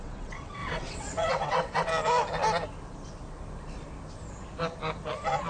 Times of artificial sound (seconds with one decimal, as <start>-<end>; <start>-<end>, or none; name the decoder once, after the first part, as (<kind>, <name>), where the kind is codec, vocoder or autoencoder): 0.0-1.9 (vocoder, WaveNeXt)